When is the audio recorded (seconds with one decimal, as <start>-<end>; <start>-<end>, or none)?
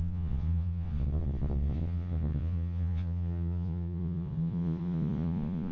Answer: none